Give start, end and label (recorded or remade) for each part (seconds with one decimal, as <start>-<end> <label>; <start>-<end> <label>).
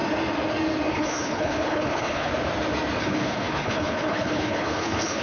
0.0-0.9 recorded; 0.9-2.3 remade; 2.3-3.0 recorded; 3.0-5.2 remade